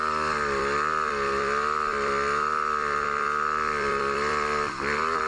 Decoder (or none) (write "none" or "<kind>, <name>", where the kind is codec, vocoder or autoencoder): vocoder, BigVGAN v2